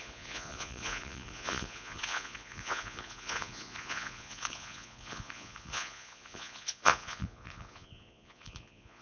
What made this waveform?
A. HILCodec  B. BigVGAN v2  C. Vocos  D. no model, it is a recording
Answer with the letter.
C